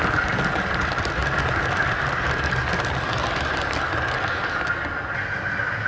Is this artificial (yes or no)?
no